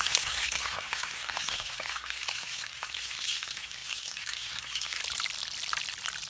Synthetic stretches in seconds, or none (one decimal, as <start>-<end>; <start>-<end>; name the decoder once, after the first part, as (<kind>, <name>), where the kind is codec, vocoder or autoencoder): 0.0-5.0 (codec, SNAC)